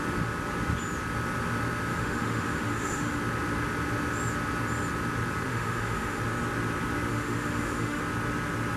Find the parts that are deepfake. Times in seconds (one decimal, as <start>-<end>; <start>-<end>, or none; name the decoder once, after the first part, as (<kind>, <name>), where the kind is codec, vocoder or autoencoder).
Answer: 1.9-3.2 (autoencoder, DAC-VAE); 5.5-6.2; 7.1-8.0